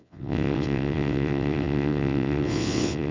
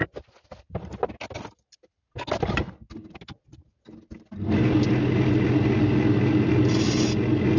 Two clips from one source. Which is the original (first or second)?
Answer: second